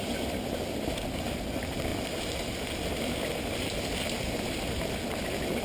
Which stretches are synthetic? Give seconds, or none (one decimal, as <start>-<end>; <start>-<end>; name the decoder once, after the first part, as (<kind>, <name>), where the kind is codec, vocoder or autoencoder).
none